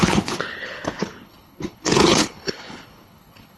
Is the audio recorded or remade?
remade